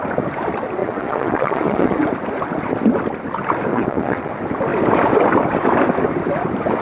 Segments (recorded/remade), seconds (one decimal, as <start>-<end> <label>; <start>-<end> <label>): 0.0-0.8 recorded; 0.8-2.0 remade; 2.0-3.7 recorded; 3.7-4.3 remade; 4.3-6.8 recorded